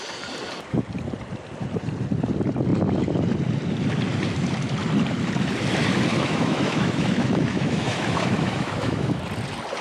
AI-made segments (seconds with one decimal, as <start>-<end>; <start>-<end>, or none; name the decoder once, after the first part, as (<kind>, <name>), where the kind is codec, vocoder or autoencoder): 6.1-9.2 (autoencoder, DAC-VAE)